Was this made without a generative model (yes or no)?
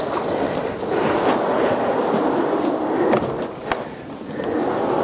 yes